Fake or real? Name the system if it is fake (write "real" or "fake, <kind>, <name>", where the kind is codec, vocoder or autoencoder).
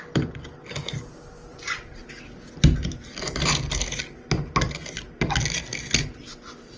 real